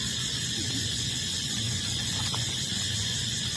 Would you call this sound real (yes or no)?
no